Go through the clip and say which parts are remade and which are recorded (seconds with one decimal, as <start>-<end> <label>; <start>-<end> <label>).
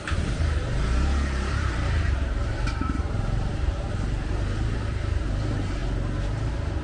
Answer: 0.0-5.8 remade; 5.8-6.8 recorded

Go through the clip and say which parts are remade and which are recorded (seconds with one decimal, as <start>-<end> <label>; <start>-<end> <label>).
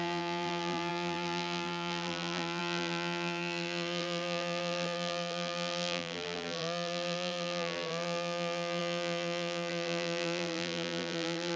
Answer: 0.0-11.6 remade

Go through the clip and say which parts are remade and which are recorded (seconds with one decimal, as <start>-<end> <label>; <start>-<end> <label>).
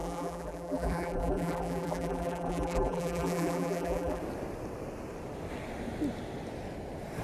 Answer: 0.0-4.2 remade; 4.2-7.2 recorded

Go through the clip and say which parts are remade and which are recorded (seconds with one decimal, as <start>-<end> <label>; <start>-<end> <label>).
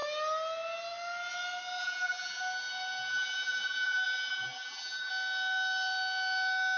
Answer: 0.0-1.8 recorded; 1.8-2.4 remade; 2.4-3.1 recorded; 3.1-5.1 remade; 5.1-6.8 recorded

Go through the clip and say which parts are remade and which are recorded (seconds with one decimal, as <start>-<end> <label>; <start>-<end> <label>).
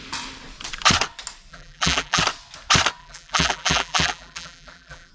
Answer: 0.0-1.5 recorded; 1.5-2.2 remade; 2.2-3.0 recorded; 3.0-5.1 remade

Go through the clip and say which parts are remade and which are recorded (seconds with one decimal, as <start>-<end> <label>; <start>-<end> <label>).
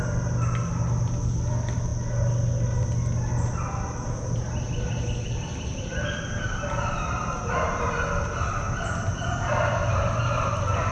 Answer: 0.0-10.9 recorded